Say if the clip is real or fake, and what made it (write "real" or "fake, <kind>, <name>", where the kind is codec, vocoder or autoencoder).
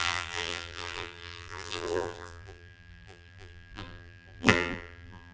fake, vocoder, BigVGAN v2